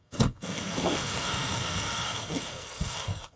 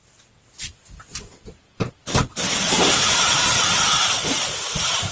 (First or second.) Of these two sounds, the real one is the second